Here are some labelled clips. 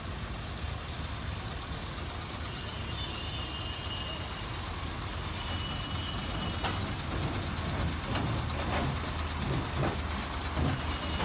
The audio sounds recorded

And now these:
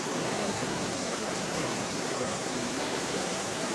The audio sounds remade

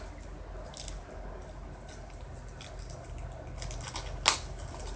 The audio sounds recorded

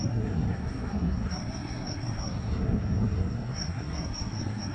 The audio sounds remade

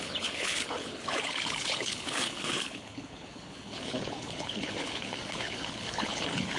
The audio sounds remade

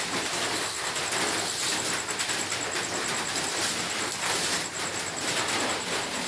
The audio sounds recorded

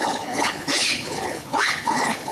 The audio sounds remade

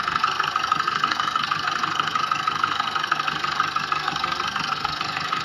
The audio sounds remade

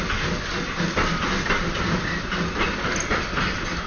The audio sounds recorded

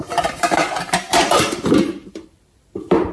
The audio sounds remade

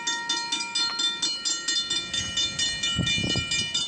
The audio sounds recorded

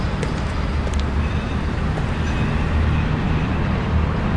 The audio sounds recorded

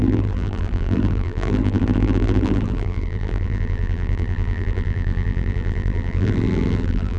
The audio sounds remade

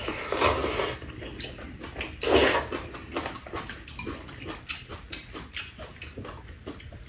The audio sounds recorded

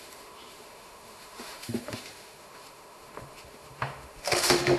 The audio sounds remade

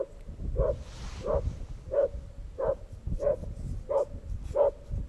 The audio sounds recorded